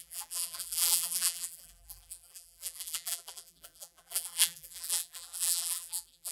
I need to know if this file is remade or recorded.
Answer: remade